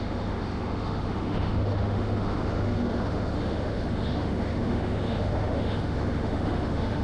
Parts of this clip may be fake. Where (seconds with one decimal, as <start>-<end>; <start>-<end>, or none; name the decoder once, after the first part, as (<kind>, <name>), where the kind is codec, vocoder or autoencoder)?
0.0-7.0 (autoencoder, DAC-VAE)